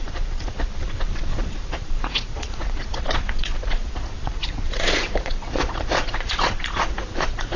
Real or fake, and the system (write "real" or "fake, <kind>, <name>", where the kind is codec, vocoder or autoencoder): fake, vocoder, Vocos